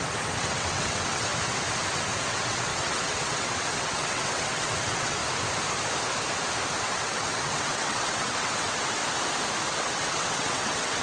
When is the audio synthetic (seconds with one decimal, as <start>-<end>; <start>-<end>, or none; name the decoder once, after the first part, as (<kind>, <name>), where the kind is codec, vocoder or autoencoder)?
0.0-1.3 (vocoder, WaveNeXt); 2.3-5.2; 6.8-9.0; 9.7-11.0